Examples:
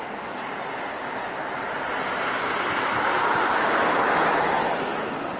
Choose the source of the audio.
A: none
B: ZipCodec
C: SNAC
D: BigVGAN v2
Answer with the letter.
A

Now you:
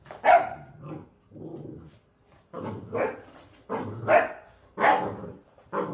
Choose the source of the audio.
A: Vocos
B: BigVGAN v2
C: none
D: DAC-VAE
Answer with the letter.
C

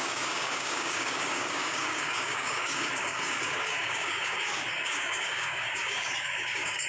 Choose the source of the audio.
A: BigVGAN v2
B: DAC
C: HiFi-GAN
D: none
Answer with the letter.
B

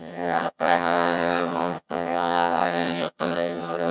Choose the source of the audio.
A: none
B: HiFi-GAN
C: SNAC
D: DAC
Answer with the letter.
B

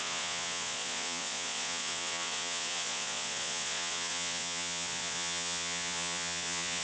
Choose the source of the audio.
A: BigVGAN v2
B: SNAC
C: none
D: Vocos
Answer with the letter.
D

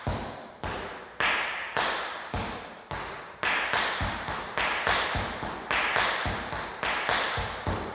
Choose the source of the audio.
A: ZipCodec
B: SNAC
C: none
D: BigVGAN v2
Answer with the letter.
C